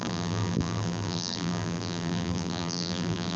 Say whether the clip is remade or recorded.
remade